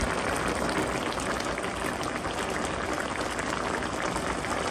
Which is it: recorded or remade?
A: recorded